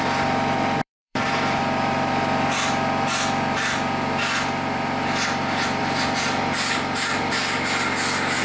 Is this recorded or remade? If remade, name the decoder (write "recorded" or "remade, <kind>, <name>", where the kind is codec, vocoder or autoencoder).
remade, vocoder, BigVGAN v2